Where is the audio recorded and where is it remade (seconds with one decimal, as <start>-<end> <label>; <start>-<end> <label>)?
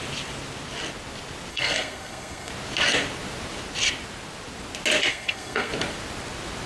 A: 0.0-1.5 recorded; 1.5-2.5 remade; 2.5-5.1 recorded; 5.1-5.7 remade; 5.7-6.7 recorded